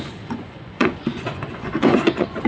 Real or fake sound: fake